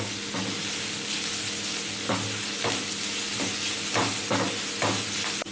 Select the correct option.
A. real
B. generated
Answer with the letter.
A